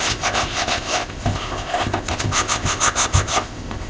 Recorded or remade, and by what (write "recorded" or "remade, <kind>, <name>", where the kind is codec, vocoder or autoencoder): remade, codec, ZipCodec